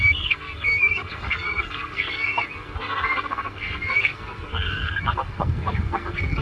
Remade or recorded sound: remade